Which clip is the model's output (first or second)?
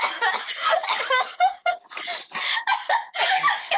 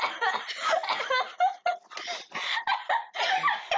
first